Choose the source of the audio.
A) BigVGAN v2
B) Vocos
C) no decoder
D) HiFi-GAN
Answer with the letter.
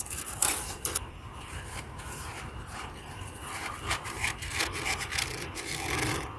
A